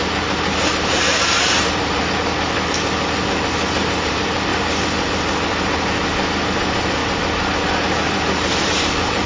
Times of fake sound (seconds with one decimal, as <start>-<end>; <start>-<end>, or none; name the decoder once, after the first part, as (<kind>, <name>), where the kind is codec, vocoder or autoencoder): 0.0-2.0 (vocoder, BigVGAN v2); 3.7-4.5; 6.5-7.0; 8.6-9.3